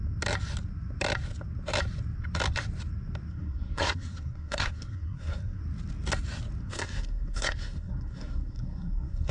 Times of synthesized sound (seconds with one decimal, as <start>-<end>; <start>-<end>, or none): 3.3-5.6; 6.6-9.3